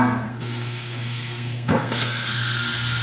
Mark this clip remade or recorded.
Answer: remade